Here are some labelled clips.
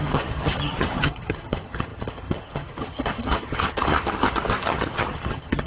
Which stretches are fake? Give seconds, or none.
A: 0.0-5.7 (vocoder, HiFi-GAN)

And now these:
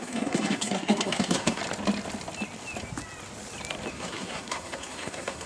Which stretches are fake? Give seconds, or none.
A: 0.0-1.6 (codec, SNAC); 3.9-5.5

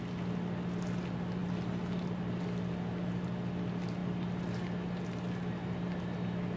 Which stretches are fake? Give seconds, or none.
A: 1.4-2.7 (vocoder, BigVGAN v2); 4.0-5.8

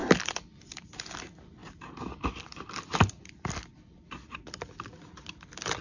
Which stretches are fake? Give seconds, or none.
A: 0.0-0.7 (vocoder, BigVGAN v2); 1.6-5.1